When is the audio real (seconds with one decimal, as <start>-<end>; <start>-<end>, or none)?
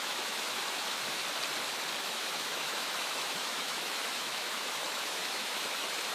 1.2-2.0